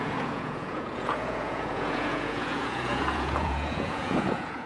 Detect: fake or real fake